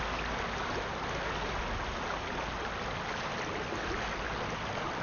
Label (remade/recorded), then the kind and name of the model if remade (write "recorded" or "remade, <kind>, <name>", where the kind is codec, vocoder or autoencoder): recorded